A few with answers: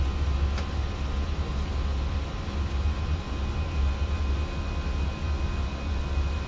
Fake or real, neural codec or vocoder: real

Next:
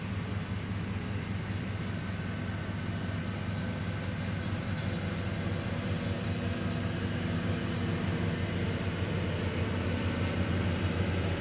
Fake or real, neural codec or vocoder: real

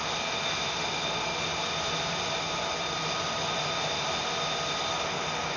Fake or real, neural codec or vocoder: real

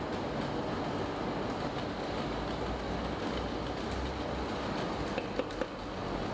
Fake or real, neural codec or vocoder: real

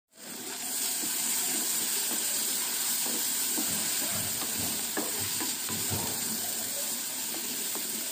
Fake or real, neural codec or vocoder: fake, vocoder, BigVGAN v2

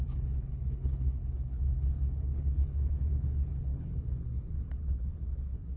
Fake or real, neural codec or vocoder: fake, codec, HILCodec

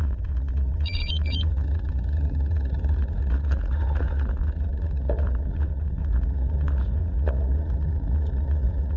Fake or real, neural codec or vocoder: fake, vocoder, Vocos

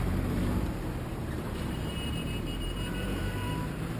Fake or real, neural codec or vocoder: fake, vocoder, BigVGAN v2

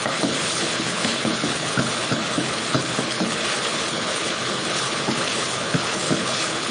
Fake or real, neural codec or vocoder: fake, codec, HILCodec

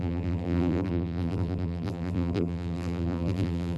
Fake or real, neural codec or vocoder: fake, vocoder, BigVGAN v2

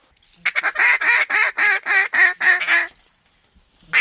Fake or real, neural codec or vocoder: real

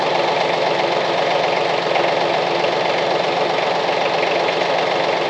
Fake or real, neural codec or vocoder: real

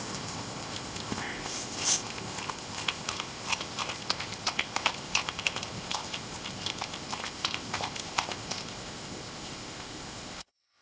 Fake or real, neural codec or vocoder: fake, codec, ZipCodec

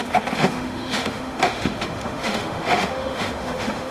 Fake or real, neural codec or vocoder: fake, autoencoder, DAC-VAE